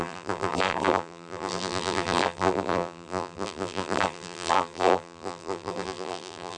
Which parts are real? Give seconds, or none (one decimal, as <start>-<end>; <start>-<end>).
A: none